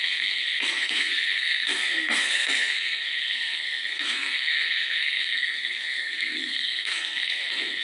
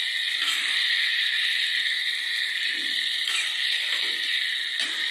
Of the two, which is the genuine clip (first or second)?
second